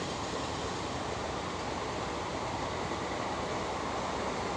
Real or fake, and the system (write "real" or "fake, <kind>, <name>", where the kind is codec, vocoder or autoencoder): real